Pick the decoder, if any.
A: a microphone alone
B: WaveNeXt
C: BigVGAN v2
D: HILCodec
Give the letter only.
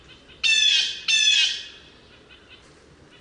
A